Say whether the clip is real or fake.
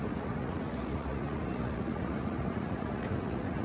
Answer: fake